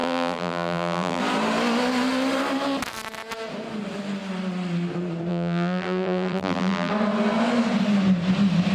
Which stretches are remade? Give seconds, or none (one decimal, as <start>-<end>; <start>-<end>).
0.0-1.2; 5.3-6.9